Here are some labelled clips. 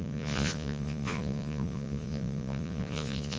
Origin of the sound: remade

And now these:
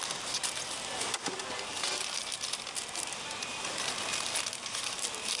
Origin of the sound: recorded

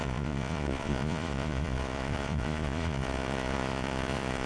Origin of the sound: remade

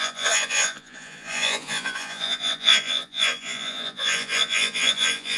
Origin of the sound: remade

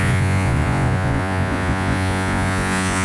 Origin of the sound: remade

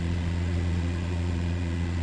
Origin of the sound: remade